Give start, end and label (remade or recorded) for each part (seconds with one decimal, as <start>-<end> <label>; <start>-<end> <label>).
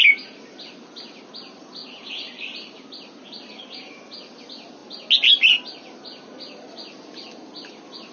0.0-1.8 recorded; 1.8-2.4 remade; 2.4-8.1 recorded